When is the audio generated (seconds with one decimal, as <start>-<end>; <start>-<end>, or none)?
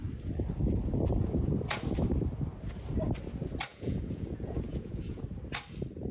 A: 3.7-5.2